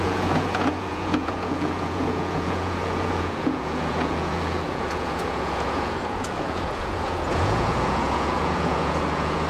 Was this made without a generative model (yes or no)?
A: no